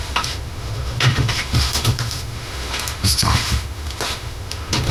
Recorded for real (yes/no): no